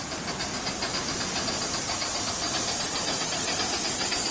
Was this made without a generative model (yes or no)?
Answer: yes